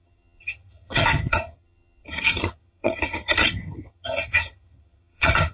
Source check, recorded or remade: remade